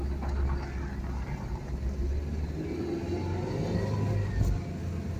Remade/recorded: recorded